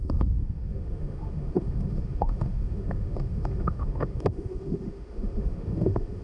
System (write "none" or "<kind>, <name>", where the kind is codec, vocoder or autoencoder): autoencoder, DAC-VAE